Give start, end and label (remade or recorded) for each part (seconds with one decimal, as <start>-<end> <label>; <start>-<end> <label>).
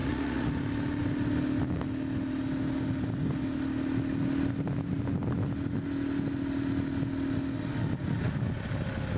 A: 0.0-0.5 remade; 0.5-9.2 recorded